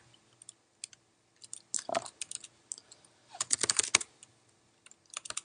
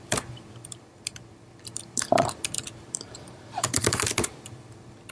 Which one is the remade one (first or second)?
second